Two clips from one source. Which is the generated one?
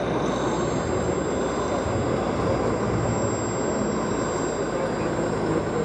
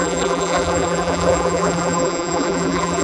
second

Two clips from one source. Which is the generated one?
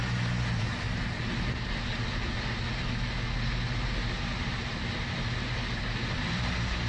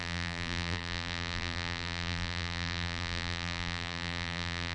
second